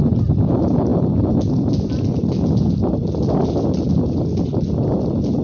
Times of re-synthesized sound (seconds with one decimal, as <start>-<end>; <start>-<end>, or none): none